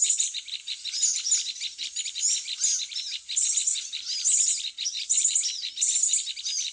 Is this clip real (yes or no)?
yes